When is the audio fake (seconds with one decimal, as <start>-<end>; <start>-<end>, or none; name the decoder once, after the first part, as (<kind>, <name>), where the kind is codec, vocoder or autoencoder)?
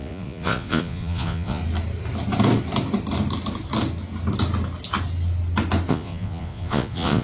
0.0-1.6 (vocoder, Vocos); 5.9-7.2